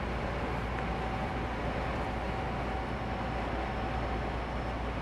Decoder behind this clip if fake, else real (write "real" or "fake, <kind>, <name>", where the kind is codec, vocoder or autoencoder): real